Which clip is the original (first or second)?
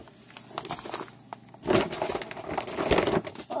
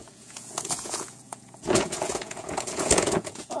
first